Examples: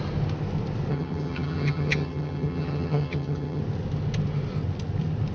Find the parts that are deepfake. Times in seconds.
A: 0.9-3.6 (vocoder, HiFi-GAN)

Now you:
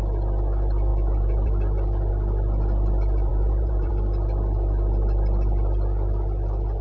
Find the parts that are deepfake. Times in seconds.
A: 3.3-3.9 (vocoder, BigVGAN v2)